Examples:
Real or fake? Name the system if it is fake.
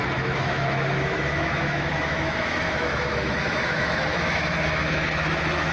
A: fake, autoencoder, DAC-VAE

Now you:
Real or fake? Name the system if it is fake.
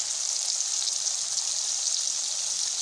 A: real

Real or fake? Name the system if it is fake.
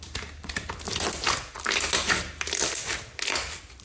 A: real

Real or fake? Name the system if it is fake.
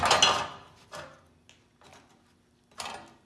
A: real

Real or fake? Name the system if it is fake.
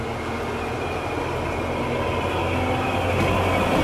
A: real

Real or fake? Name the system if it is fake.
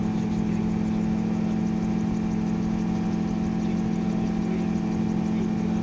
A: real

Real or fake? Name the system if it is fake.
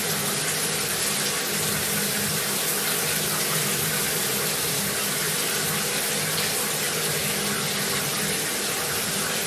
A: real